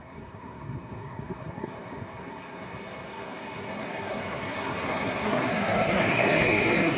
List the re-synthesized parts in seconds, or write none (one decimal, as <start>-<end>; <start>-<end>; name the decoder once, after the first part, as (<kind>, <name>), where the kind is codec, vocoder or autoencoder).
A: 0.0-7.0 (codec, SNAC)